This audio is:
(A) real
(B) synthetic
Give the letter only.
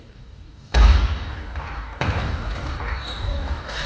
B